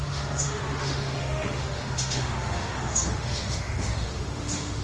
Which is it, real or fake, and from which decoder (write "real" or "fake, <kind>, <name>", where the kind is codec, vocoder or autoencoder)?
fake, autoencoder, DAC-VAE